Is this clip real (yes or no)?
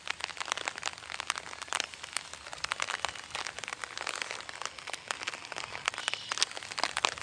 yes